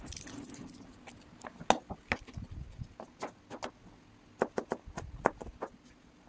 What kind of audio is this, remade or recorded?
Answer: recorded